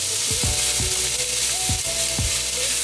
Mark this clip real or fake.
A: real